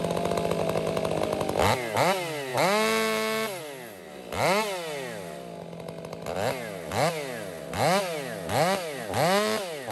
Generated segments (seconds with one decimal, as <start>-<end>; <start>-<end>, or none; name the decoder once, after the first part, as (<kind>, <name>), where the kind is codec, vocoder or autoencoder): none